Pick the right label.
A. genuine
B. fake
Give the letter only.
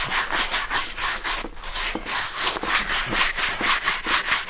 A